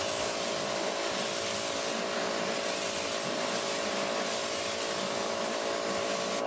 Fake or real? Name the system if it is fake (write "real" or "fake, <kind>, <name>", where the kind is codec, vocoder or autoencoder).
real